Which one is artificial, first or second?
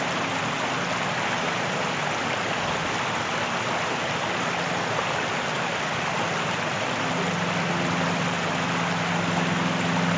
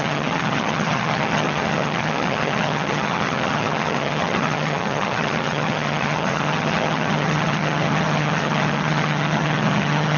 second